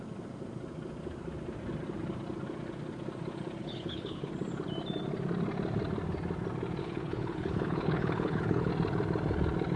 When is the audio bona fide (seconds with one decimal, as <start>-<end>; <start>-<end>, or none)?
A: 0.0-3.6; 4.3-6.8; 8.7-9.8